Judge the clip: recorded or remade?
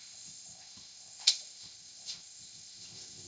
remade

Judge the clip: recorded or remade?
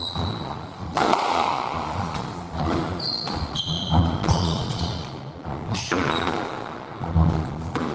remade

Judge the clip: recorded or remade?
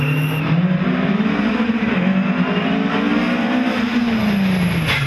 recorded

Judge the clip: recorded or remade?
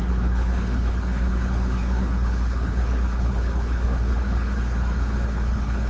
remade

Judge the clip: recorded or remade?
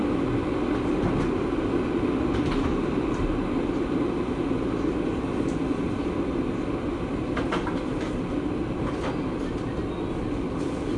recorded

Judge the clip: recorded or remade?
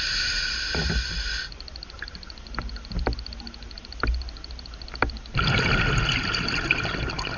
recorded